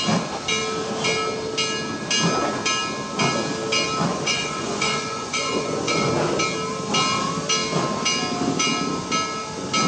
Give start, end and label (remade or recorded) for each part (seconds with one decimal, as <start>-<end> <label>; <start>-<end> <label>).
0.0-4.1 recorded; 4.1-6.1 remade; 6.1-9.9 recorded